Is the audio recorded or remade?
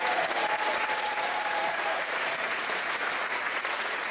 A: remade